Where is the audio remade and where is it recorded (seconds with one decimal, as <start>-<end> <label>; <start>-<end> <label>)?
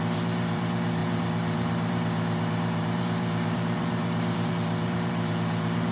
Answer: 0.0-5.9 remade